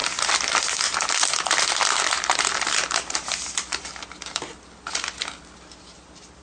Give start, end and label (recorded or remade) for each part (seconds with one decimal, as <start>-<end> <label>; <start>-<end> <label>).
0.0-6.4 recorded